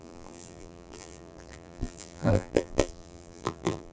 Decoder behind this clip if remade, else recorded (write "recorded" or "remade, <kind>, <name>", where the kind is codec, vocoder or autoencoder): remade, vocoder, BigVGAN v2